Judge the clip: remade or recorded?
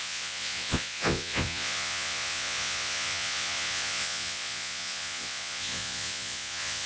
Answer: remade